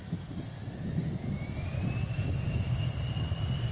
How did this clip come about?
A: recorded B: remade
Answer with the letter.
A